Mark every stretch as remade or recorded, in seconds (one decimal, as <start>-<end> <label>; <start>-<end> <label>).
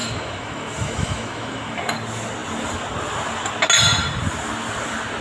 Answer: 0.0-1.8 remade; 1.8-5.2 recorded